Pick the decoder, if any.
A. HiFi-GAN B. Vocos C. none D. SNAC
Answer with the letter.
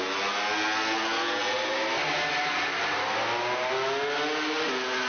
C